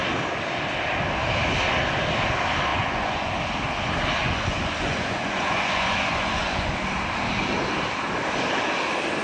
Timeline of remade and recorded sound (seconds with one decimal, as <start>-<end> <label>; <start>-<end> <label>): 0.0-2.7 recorded; 2.7-3.3 remade; 3.3-4.2 recorded; 4.2-6.7 remade; 6.7-9.2 recorded